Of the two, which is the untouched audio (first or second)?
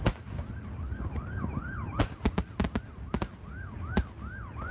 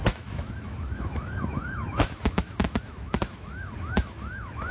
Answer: first